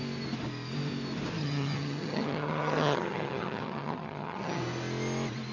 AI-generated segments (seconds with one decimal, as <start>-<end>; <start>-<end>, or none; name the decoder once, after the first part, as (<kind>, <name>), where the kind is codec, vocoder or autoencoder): 1.4-4.6 (vocoder, HiFi-GAN)